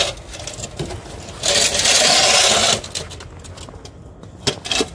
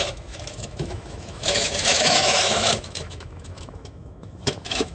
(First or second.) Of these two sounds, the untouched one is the first